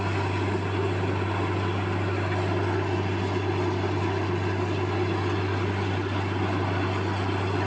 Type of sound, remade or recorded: recorded